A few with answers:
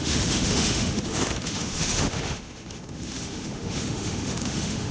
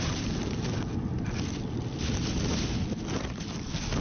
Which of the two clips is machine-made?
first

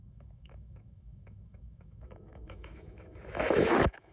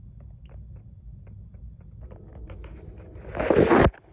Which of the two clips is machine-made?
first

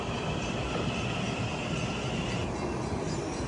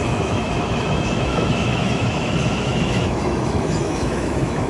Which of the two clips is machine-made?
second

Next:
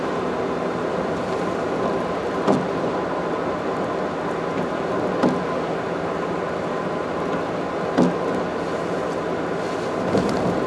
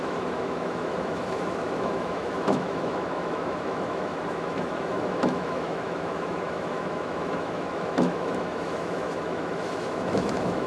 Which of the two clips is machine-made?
second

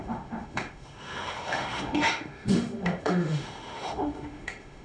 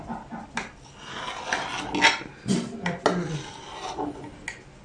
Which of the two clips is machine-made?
first